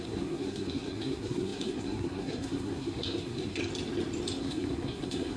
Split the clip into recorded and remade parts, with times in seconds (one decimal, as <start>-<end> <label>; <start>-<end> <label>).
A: 0.0-3.6 remade; 3.6-4.4 recorded; 4.4-5.4 remade

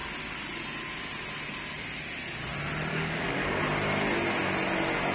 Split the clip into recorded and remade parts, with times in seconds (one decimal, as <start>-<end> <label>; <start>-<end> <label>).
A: 0.0-2.9 recorded; 2.9-3.6 remade; 3.6-5.1 recorded